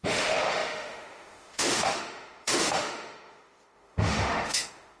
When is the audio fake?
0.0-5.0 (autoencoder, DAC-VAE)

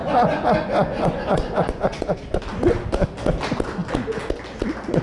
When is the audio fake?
0.0-2.4 (vocoder, Vocos)